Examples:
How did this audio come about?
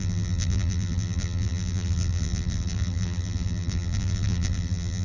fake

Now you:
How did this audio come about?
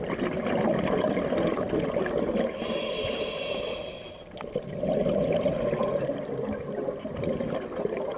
real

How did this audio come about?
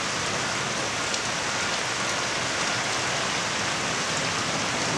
real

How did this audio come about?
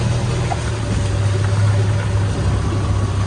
real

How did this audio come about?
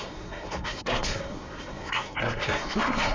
fake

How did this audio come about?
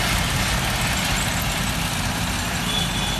real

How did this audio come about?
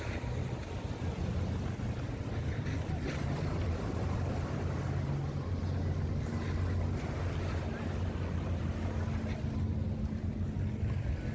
real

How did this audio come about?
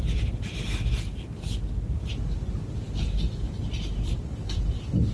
real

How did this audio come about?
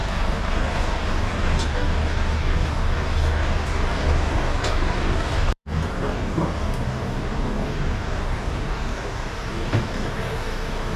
fake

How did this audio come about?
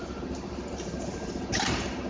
fake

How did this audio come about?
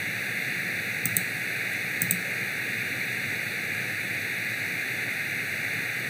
real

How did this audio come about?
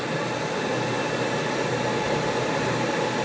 real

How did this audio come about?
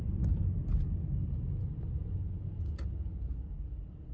real